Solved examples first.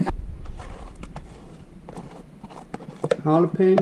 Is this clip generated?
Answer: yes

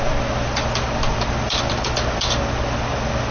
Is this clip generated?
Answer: yes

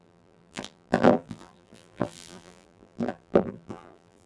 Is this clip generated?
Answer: yes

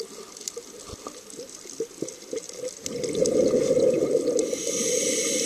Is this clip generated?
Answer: no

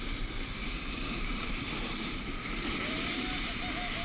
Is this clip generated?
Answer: yes